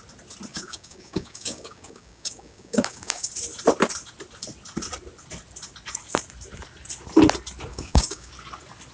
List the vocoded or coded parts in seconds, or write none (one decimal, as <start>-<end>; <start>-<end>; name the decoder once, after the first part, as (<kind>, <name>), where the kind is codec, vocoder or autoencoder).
0.5-3.3 (codec, DAC); 7.7-8.3